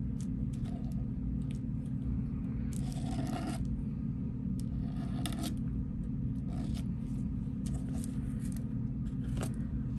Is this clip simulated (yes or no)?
no